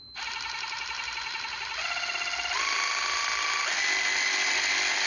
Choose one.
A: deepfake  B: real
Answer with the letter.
B